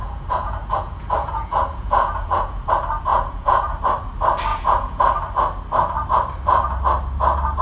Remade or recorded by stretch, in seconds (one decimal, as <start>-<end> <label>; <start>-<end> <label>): 0.0-2.7 remade; 2.7-3.1 recorded; 3.1-3.7 remade; 3.7-4.5 recorded; 4.5-5.0 remade; 5.0-7.6 recorded